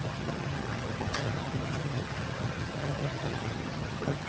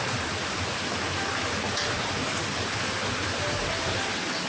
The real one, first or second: second